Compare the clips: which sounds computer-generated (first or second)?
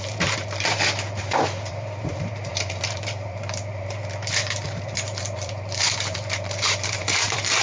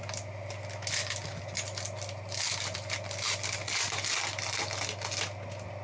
first